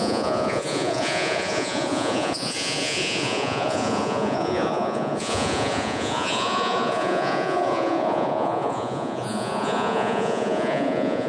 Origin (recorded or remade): remade